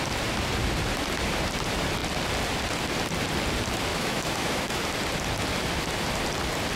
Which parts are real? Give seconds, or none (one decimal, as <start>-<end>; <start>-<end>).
0.0-3.9; 4.8-6.8